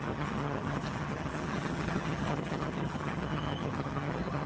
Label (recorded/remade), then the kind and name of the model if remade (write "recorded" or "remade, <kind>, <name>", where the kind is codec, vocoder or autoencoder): remade, vocoder, HiFi-GAN